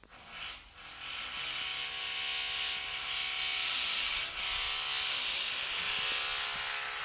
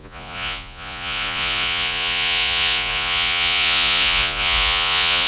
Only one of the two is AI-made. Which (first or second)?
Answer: second